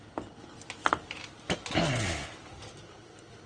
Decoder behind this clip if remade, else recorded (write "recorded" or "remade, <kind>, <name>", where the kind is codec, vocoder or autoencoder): recorded